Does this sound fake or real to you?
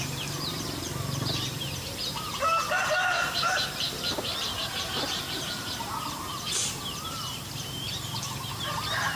fake